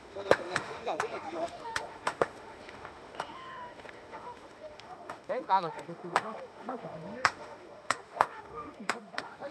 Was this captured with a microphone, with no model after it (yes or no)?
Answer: no